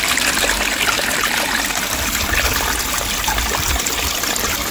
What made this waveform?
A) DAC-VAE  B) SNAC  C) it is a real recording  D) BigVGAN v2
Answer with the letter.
C